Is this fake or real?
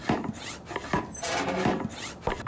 real